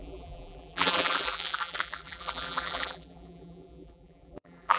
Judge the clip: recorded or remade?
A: remade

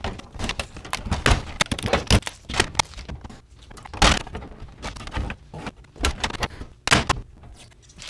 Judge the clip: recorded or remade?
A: recorded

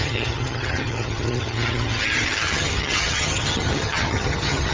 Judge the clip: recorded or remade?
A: remade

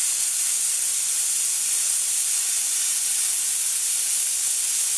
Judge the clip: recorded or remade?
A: recorded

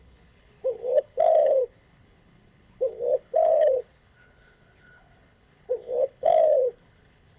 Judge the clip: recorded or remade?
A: remade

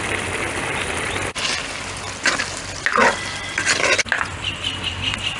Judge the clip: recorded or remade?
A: recorded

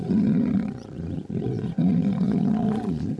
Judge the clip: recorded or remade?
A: remade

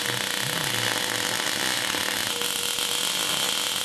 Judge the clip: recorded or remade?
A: recorded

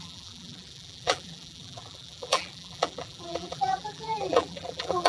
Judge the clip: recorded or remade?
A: remade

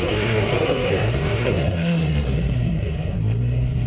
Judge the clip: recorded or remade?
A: remade